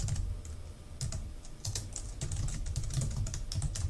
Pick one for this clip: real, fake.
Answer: real